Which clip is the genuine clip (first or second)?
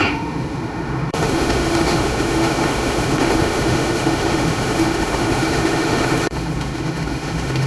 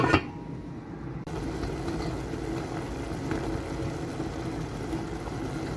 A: second